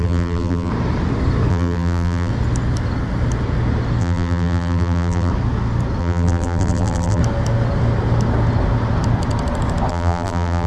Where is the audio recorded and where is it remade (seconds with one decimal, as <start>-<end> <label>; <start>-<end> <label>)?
0.0-0.7 remade; 0.7-1.5 recorded; 1.5-2.3 remade; 2.3-4.0 recorded; 4.0-5.3 remade; 5.3-6.0 recorded; 6.0-7.2 remade; 7.2-9.9 recorded; 9.9-10.7 remade